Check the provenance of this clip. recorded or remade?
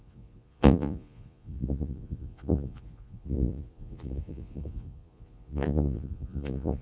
remade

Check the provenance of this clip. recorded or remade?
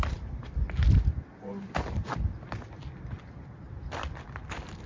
recorded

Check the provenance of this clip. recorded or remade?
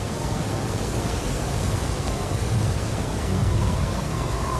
remade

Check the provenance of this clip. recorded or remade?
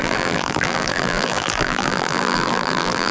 remade